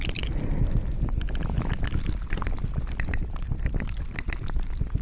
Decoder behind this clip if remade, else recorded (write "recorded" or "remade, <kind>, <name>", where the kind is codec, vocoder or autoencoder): recorded